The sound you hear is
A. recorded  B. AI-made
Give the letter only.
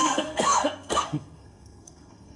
B